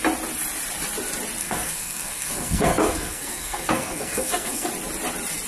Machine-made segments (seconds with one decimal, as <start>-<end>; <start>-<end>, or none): 1.4-4.7